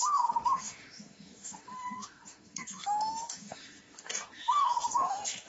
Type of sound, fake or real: fake